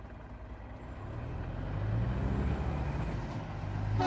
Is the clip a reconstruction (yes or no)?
no